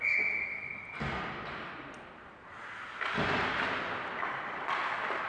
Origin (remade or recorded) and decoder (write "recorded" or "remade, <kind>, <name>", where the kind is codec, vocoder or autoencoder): recorded